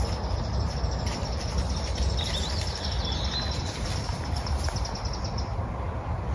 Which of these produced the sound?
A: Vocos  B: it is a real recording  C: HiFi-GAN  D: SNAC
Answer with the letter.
B